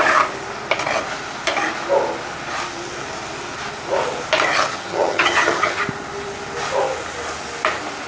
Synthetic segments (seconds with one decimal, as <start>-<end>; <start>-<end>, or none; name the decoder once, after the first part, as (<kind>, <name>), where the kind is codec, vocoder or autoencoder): 4.7-5.8 (vocoder, HiFi-GAN)